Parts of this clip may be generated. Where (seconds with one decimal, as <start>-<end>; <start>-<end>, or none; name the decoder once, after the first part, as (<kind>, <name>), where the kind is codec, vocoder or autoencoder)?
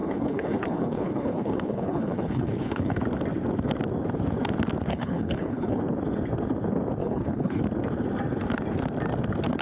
0.0-3.0 (codec, HILCodec); 4.9-5.8; 7.0-7.6